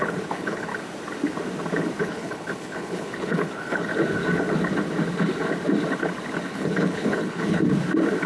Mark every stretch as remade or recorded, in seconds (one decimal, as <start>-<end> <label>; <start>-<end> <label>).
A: 0.0-0.7 remade; 0.7-2.0 recorded; 2.0-3.9 remade; 3.9-6.5 recorded; 6.5-7.6 remade; 7.6-8.3 recorded